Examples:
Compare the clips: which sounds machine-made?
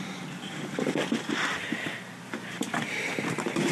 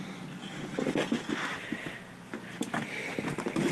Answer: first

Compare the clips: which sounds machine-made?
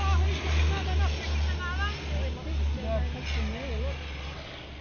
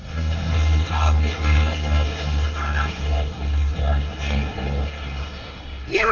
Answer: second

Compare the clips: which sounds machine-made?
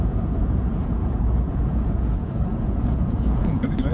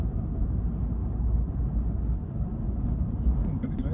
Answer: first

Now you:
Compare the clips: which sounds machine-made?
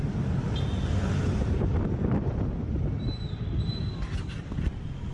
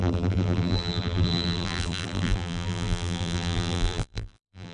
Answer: second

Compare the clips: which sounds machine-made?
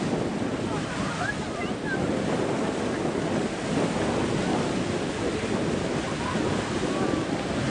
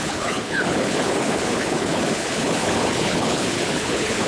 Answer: second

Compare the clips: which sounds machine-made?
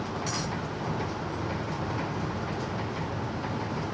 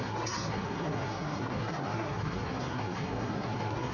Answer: second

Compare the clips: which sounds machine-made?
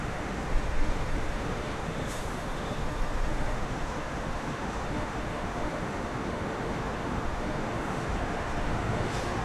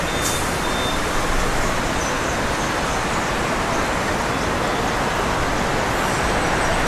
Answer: first